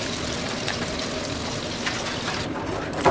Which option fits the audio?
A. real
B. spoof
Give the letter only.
A